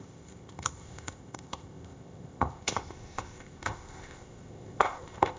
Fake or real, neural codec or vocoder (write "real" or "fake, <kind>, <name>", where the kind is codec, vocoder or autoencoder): fake, codec, ZipCodec